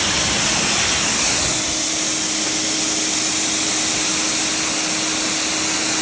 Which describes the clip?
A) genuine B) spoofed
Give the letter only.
A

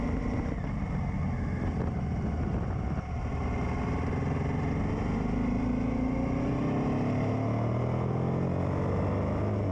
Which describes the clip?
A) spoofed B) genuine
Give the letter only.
B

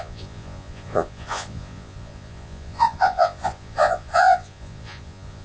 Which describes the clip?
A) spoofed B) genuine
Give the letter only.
A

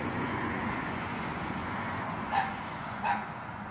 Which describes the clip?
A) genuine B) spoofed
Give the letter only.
B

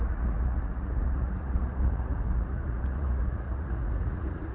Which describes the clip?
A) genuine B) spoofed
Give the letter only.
B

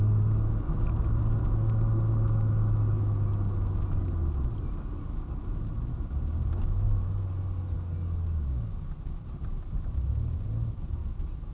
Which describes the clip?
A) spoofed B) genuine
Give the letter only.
B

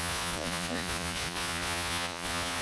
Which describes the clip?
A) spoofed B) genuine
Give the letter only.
A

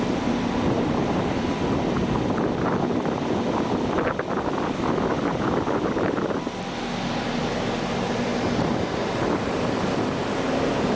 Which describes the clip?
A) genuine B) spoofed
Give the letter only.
A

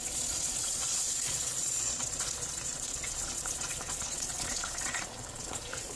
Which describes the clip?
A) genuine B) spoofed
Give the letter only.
B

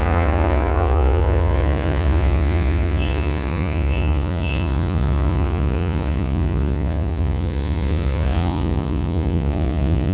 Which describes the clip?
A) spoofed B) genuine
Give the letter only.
A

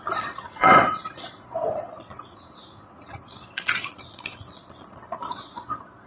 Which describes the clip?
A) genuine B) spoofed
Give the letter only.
B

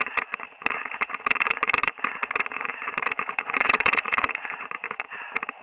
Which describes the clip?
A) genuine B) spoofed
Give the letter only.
B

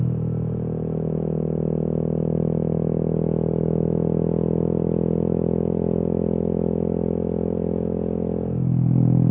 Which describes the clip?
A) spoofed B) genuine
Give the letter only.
B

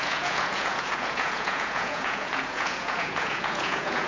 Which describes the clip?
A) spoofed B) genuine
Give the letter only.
A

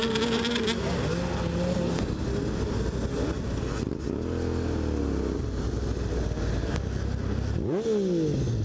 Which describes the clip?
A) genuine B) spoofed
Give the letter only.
A